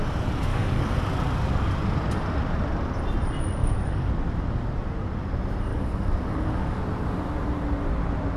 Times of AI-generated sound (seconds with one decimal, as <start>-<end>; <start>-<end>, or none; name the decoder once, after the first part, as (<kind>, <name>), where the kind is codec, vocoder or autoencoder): 0.5-1.0 (codec, DAC); 3.6-4.1; 5.7-6.8